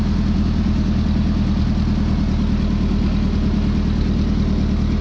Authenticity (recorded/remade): recorded